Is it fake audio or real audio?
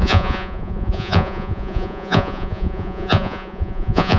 fake